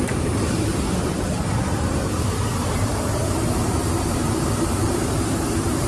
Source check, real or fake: fake